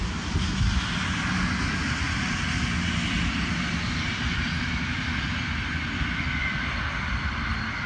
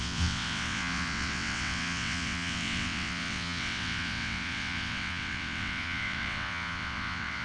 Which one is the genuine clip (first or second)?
first